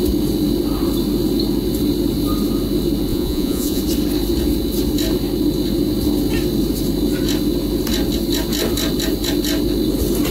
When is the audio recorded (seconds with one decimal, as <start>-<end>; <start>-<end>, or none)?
0.0-3.1; 3.8-10.3